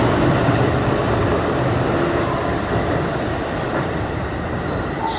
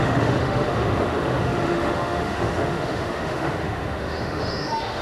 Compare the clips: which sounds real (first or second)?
first